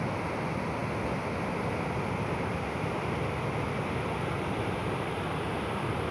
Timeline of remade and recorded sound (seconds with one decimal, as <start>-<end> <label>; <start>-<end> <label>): 0.0-6.1 recorded